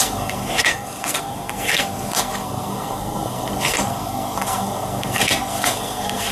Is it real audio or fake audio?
fake